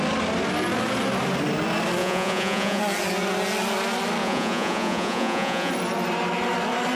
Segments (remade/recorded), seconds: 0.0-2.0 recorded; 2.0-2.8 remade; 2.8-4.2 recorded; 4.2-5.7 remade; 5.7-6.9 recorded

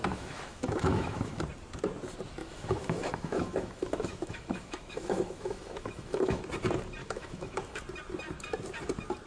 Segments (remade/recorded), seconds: 0.0-1.4 remade; 1.4-2.4 recorded; 2.4-6.4 remade; 6.4-7.0 recorded; 7.0-7.8 remade; 7.8-9.3 recorded

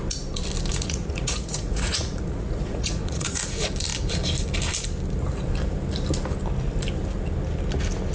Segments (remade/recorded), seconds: 0.0-0.7 recorded; 0.7-3.4 remade; 3.4-8.1 recorded

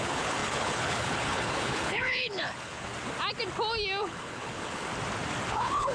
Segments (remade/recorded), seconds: 0.0-2.9 remade; 2.9-4.0 recorded; 4.0-4.9 remade; 4.9-5.5 recorded; 5.5-5.9 remade

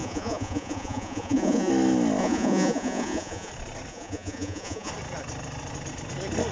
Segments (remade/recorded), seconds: 0.0-1.7 remade; 1.7-2.2 recorded; 2.2-3.5 remade; 3.5-3.9 recorded; 3.9-4.9 remade; 4.9-6.5 recorded

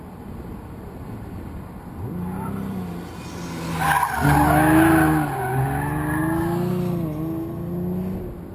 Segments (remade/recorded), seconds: 0.0-8.5 recorded

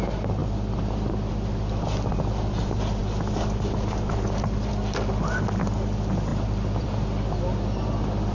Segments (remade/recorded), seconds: 0.0-6.3 recorded; 6.3-6.9 remade; 6.9-8.3 recorded

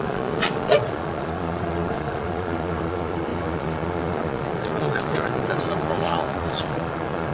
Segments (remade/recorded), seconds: 0.0-7.3 remade